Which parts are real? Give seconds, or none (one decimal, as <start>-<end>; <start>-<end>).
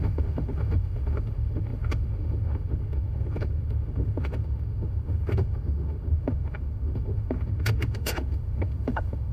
none